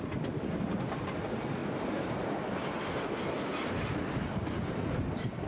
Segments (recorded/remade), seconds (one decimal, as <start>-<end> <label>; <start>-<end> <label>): 0.0-5.5 recorded